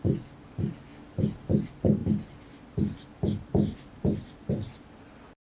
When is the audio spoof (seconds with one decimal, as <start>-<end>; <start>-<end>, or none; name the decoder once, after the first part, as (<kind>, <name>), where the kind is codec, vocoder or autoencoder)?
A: none